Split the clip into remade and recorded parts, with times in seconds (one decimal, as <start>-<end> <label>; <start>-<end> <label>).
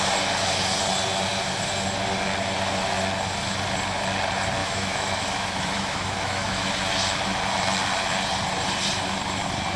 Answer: 0.0-4.6 recorded; 4.6-6.7 remade; 6.7-9.8 recorded